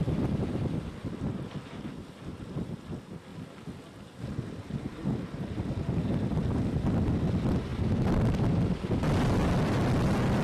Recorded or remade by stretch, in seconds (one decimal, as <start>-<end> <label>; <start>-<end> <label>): 0.0-10.4 recorded